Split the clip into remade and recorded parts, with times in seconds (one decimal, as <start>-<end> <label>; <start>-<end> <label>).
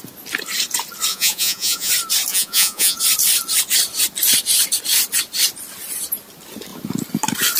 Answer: 0.0-1.1 recorded; 1.1-1.9 remade; 1.9-2.3 recorded; 2.3-3.0 remade; 3.0-7.6 recorded